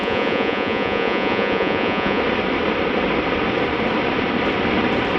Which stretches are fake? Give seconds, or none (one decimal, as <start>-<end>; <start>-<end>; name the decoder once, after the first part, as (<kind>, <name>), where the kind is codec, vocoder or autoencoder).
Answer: 0.0-2.2 (vocoder, Vocos)